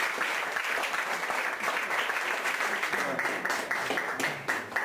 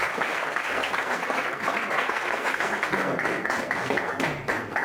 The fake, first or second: second